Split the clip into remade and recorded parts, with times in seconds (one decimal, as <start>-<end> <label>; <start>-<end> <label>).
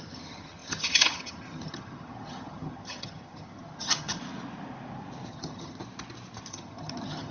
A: 0.0-4.2 remade; 4.2-5.3 recorded; 5.3-5.8 remade; 5.8-6.5 recorded; 6.5-7.3 remade